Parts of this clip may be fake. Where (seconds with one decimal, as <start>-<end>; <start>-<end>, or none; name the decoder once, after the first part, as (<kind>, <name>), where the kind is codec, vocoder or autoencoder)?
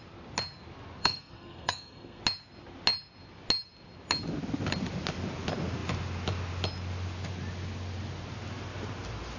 1.0-2.2 (codec, SNAC)